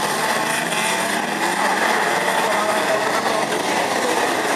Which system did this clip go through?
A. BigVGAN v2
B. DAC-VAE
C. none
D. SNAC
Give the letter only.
C